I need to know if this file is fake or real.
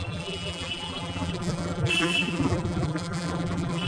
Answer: fake